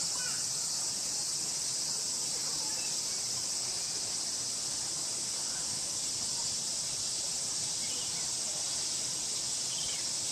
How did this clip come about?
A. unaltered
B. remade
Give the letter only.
A